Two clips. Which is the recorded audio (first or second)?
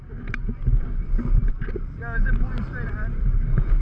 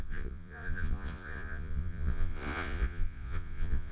first